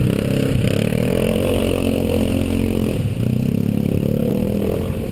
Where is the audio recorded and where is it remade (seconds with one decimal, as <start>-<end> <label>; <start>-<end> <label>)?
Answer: 0.0-0.9 recorded; 0.9-1.6 remade; 1.6-4.2 recorded; 4.2-5.1 remade